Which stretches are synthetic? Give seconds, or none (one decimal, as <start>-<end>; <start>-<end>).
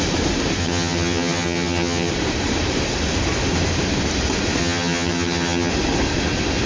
0.6-2.1; 4.6-5.7